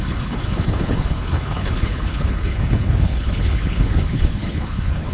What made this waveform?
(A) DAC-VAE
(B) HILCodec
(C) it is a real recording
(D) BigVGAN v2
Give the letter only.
B